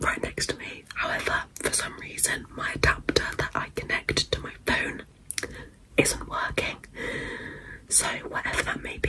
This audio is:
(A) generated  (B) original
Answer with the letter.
B